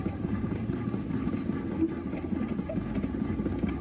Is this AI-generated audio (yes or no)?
no